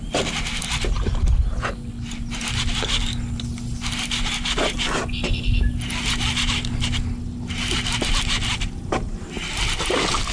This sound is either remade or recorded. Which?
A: recorded